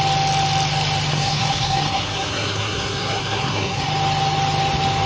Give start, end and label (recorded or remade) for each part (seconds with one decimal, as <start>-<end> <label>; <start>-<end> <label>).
0.0-1.1 recorded; 1.1-3.9 remade; 3.9-5.1 recorded